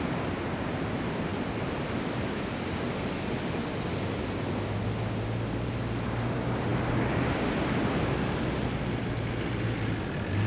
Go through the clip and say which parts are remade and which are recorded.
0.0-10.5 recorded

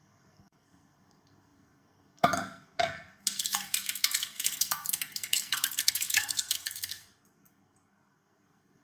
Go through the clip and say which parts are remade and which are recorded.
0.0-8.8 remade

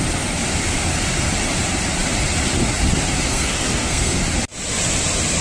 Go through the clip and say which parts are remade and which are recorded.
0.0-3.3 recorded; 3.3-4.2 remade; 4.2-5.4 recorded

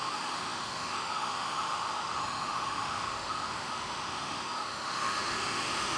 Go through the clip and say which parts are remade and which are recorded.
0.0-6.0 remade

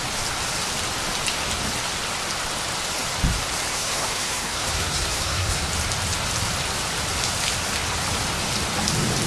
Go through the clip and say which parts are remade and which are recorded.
0.0-3.7 recorded; 3.7-5.7 remade; 5.7-9.3 recorded

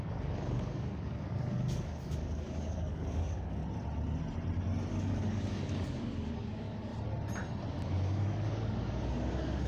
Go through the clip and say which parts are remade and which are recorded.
0.0-3.6 remade; 3.6-4.9 recorded; 4.9-6.9 remade; 6.9-7.7 recorded; 7.7-9.7 remade

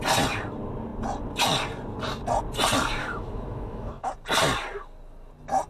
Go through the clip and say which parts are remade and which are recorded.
0.0-3.0 recorded; 3.0-4.1 remade; 4.1-5.7 recorded

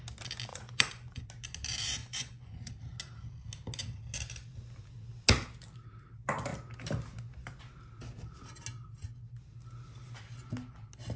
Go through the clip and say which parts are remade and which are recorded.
0.0-0.5 recorded; 0.5-1.2 remade; 1.2-2.0 recorded; 2.0-2.7 remade; 2.7-11.2 recorded